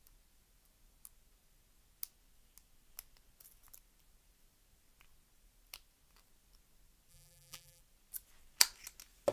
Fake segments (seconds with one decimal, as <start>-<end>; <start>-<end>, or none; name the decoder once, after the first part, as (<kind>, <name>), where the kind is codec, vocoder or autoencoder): 7.1-7.8 (vocoder, BigVGAN v2)